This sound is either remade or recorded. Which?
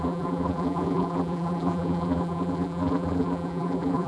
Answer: remade